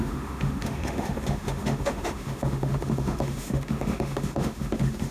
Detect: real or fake fake